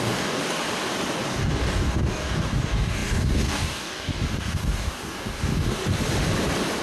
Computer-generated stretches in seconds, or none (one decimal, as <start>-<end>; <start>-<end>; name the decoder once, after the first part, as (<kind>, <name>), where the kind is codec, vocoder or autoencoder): 0.0-0.4 (codec, DAC); 1.3-5.8